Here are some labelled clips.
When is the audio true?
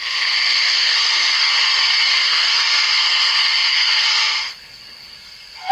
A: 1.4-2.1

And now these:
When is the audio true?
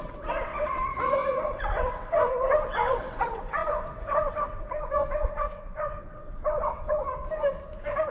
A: 7.2-8.1